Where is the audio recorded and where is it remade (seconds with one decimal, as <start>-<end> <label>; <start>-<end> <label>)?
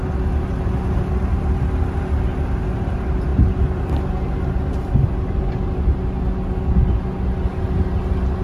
0.0-8.4 recorded